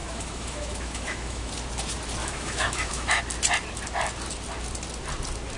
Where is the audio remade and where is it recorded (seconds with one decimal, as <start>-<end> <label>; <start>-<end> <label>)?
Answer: 0.0-1.5 remade; 1.5-2.2 recorded; 2.2-3.2 remade; 3.2-5.6 recorded